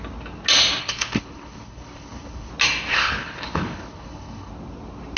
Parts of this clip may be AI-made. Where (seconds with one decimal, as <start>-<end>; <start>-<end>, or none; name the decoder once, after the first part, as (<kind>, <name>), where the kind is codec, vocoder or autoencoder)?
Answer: 0.8-2.5 (codec, HILCodec); 2.9-4.5